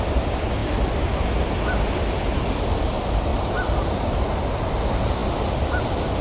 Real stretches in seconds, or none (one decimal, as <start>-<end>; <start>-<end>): 0.0-3.3; 4.3-6.2

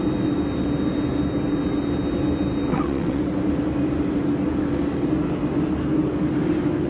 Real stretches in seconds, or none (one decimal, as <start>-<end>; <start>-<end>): 0.0-2.7; 3.2-6.9

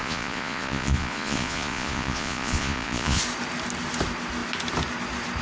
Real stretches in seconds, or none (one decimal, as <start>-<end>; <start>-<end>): 3.2-5.4

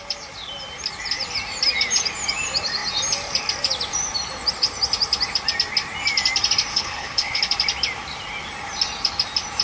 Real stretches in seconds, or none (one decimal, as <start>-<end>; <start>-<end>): 0.0-6.7; 7.4-9.6

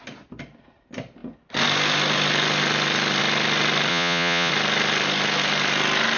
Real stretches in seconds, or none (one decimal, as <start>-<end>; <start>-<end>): 0.0-3.9; 4.5-6.2

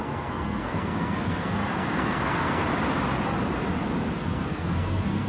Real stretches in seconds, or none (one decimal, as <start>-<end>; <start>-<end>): 2.6-4.2

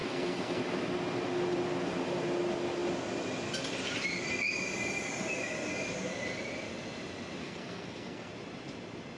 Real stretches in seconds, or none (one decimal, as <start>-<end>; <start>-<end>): 0.6-7.4; 8.3-9.2